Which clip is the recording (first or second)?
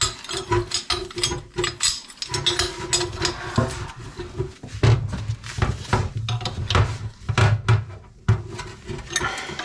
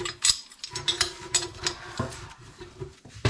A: first